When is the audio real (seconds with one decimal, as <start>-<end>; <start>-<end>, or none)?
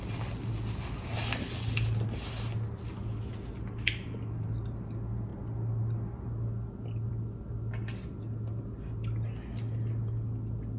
0.0-10.8